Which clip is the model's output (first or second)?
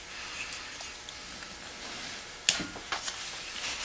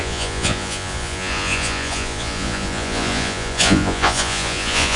second